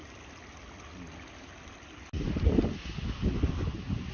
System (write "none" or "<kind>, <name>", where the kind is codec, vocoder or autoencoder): none